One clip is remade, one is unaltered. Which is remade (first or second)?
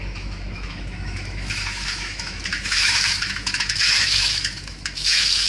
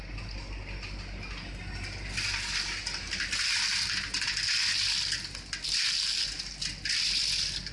first